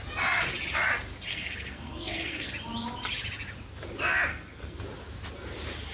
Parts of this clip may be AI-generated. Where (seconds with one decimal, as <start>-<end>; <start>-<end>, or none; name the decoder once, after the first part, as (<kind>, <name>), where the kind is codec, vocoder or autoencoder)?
1.3-2.5 (codec, SNAC); 4.3-4.8